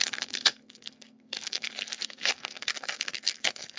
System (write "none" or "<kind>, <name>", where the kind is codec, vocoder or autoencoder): codec, SNAC